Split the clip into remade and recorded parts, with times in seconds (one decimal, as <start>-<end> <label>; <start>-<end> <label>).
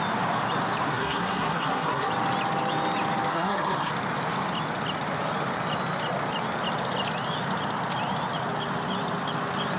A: 0.0-0.9 recorded; 0.9-2.1 remade; 2.1-3.3 recorded; 3.3-3.9 remade; 3.9-9.8 recorded